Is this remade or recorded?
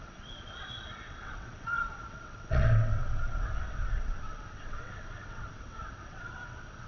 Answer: remade